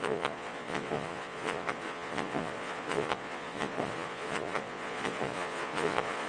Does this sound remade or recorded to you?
remade